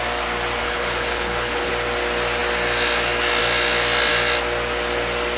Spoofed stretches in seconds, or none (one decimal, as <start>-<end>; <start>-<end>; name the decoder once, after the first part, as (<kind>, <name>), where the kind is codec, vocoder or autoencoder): 0.6-1.7 (codec, HILCodec)

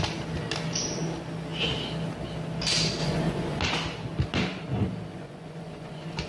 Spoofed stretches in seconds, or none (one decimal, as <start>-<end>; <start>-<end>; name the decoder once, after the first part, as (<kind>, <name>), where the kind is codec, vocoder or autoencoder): 3.0-3.6 (vocoder, Vocos); 5.1-6.3